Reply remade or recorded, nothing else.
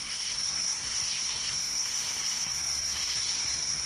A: remade